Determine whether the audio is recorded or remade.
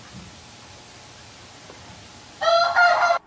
recorded